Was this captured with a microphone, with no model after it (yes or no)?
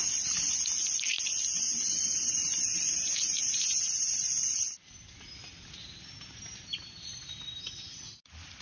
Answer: yes